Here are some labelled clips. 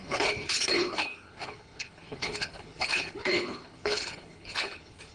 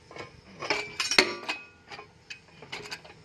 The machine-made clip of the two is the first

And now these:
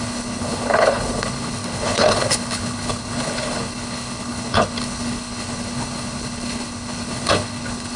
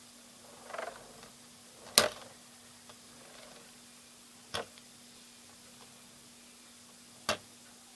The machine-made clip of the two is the first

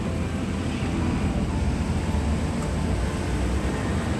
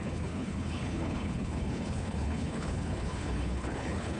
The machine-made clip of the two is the second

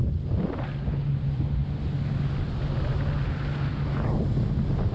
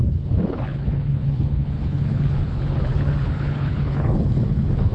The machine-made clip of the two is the second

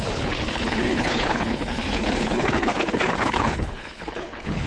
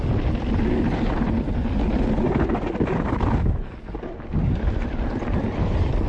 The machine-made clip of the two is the first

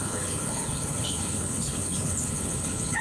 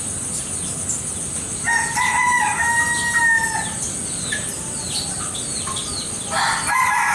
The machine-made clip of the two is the first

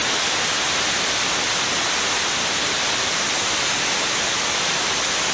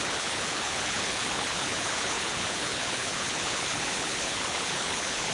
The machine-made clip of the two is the second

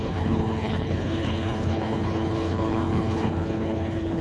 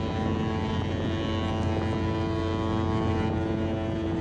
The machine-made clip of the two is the first